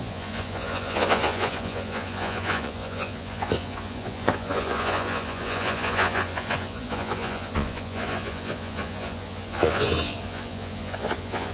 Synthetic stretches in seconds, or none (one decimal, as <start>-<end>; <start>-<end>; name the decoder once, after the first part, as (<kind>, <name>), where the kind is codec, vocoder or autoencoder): 0.0-11.5 (vocoder, Vocos)

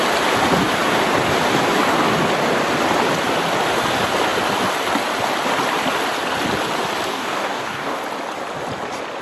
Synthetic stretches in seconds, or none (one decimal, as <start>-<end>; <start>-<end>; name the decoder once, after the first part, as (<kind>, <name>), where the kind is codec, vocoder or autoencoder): 7.1-8.0 (codec, DAC)

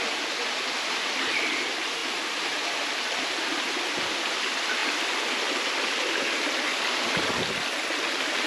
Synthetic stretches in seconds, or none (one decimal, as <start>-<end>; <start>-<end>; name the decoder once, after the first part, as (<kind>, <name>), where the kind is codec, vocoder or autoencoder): none